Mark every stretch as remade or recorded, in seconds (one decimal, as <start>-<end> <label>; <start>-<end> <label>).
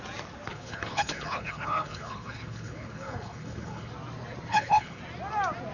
0.0-0.5 recorded; 0.5-3.9 remade; 3.9-4.5 recorded; 4.5-5.0 remade; 5.0-5.7 recorded